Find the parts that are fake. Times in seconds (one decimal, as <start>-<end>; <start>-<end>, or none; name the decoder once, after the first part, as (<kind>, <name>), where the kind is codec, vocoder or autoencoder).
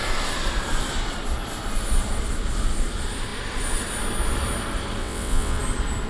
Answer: 5.0-5.6 (vocoder, WaveNeXt)